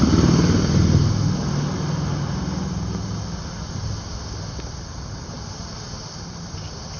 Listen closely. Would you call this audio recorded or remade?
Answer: recorded